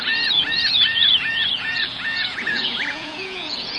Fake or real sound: fake